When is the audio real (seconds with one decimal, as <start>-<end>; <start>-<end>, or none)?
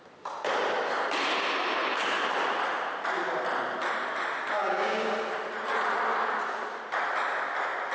0.0-4.6; 5.1-7.9